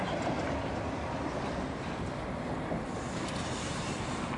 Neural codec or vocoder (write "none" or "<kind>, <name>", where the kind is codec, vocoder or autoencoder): none